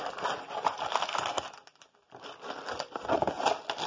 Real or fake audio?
real